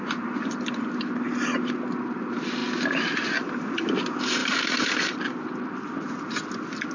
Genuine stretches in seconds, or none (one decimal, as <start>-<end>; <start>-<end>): 0.0-4.4; 5.1-6.9